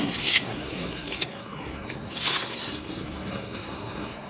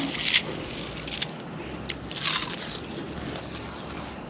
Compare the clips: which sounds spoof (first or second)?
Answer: first